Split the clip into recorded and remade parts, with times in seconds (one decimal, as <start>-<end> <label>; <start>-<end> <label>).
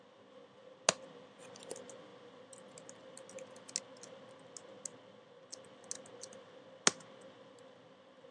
0.0-8.3 recorded